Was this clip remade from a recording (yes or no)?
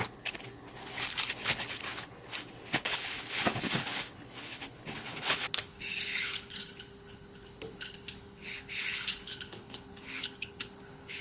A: yes